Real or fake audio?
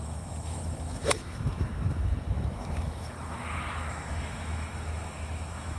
fake